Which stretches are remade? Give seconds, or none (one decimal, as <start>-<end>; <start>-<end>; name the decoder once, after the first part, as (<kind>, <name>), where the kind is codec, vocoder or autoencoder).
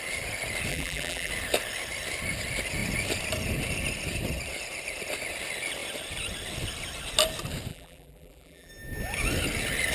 0.7-1.3 (vocoder, BigVGAN v2); 7.7-8.7